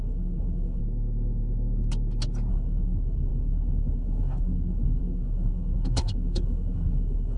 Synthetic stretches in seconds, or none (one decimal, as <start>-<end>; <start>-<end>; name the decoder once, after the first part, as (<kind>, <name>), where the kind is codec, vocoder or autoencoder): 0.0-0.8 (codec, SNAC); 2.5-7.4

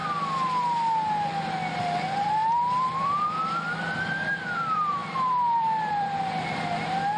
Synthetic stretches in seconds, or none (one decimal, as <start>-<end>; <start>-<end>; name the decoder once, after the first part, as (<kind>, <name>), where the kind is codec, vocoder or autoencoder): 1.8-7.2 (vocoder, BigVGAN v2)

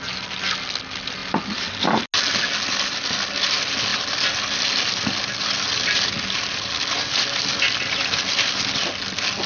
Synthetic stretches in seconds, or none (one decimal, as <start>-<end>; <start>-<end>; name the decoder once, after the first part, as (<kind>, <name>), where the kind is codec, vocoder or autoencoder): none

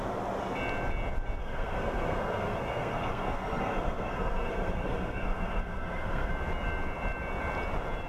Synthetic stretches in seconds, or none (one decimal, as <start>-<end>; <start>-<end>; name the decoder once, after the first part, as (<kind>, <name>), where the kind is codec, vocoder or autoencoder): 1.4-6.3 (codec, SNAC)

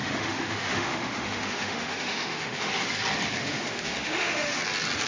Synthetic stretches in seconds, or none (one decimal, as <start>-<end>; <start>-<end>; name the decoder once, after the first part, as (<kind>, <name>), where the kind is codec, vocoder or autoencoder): 0.0-2.7 (autoencoder, DAC-VAE); 3.4-4.6

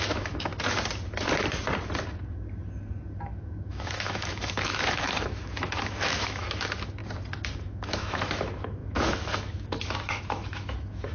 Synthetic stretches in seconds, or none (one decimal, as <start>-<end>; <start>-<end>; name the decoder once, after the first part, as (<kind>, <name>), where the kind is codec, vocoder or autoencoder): 0.0-0.5 (autoencoder, DAC-VAE); 3.3-7.0; 7.6-11.1

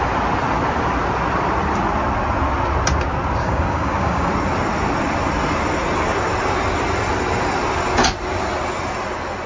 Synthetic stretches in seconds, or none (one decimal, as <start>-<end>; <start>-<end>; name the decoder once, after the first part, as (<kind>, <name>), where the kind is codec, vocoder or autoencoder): 3.4-4.3 (codec, DAC)

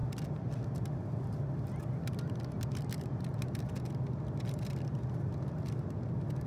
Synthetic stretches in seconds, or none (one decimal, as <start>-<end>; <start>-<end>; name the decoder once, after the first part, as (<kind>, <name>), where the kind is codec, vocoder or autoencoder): none